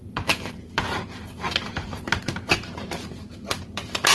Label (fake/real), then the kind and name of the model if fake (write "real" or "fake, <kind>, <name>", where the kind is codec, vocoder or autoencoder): fake, vocoder, BigVGAN v2